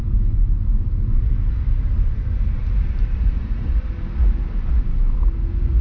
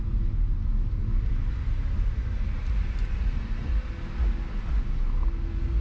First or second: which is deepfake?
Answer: first